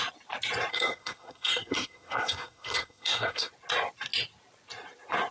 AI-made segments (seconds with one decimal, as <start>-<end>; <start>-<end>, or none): 0.7-3.5